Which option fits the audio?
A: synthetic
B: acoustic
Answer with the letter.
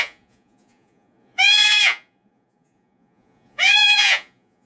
A